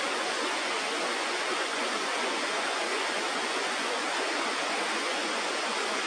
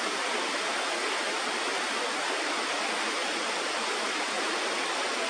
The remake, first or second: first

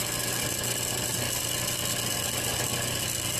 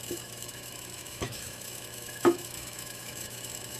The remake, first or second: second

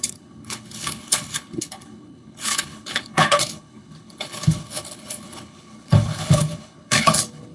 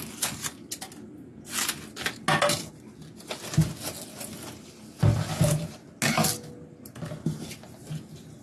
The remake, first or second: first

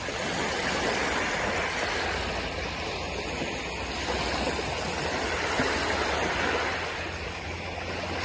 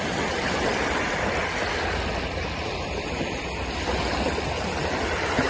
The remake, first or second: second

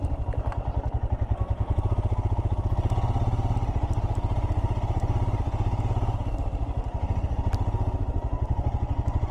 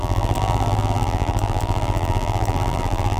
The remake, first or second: second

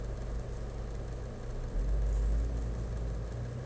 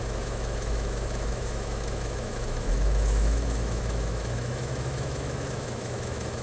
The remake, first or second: second